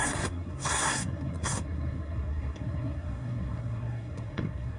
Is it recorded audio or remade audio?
remade